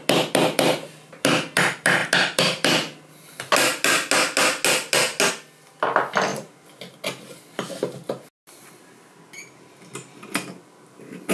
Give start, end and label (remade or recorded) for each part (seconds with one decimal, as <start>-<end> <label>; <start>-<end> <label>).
0.0-11.3 recorded